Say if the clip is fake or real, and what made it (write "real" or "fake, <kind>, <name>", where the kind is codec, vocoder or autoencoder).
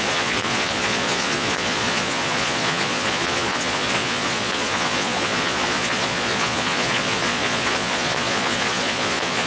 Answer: fake, vocoder, Vocos